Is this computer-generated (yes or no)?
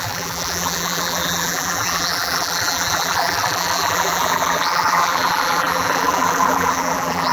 yes